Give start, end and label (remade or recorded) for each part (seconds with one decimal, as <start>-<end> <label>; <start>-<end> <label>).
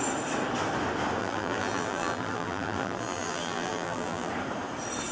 0.0-1.2 recorded; 1.2-4.3 remade; 4.3-5.1 recorded